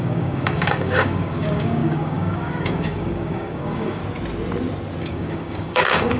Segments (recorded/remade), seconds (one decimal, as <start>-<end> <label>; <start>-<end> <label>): 0.0-4.0 remade; 4.0-5.0 recorded; 5.0-6.2 remade